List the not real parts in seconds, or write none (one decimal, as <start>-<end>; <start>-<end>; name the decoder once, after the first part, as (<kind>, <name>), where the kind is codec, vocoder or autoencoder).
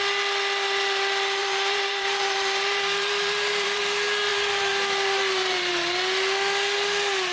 1.4-3.8 (vocoder, BigVGAN v2); 4.3-5.7